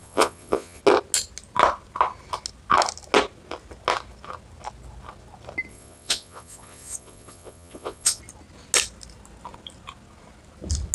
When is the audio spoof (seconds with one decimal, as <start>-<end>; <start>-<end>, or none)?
0.0-0.8; 5.7-8.2